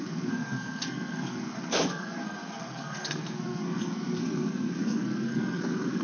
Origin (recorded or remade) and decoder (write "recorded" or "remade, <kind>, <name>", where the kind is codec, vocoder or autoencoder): remade, codec, SNAC